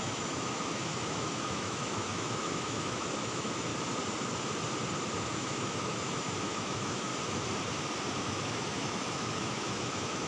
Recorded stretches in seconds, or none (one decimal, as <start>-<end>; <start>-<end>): 3.7-5.3; 7.1-8.2

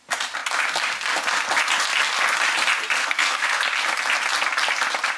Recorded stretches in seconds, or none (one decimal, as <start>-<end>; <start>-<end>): 0.0-3.0; 3.6-5.2

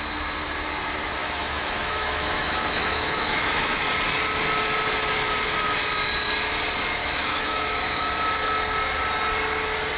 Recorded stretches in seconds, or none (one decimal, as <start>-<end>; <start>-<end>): 0.0-1.2; 3.8-7.0; 8.1-10.0

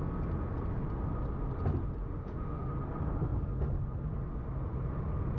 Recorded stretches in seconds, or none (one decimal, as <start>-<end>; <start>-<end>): 0.0-2.0; 2.7-5.4

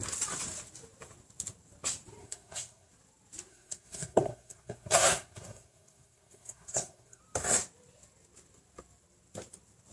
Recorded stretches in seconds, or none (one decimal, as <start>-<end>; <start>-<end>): 0.0-2.2; 2.9-3.5; 7.2-9.9